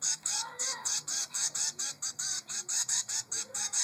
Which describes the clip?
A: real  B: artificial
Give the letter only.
B